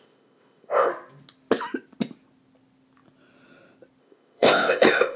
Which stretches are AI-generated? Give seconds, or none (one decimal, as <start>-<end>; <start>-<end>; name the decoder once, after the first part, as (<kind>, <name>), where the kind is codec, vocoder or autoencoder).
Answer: 0.0-0.9 (codec, ZipCodec); 4.0-5.2